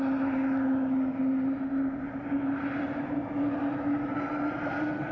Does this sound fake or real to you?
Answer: real